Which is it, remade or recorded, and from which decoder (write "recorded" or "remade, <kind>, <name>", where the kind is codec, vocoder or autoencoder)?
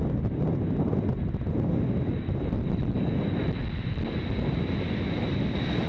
recorded